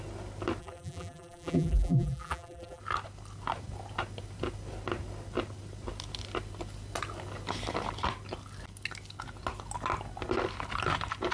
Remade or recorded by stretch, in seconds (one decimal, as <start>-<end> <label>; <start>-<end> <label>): 0.0-0.6 recorded; 0.6-2.8 remade; 2.8-11.3 recorded